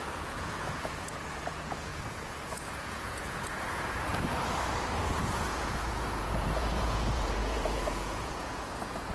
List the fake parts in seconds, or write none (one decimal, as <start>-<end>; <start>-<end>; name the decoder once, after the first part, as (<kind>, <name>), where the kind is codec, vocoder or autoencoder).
0.0-4.1 (vocoder, Vocos); 5.2-9.1